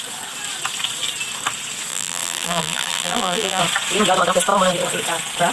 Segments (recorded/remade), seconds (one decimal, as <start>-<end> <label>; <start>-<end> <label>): 0.0-1.9 recorded; 1.9-3.6 remade; 3.6-5.5 recorded